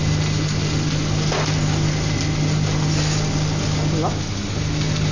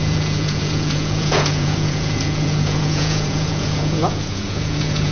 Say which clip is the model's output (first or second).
second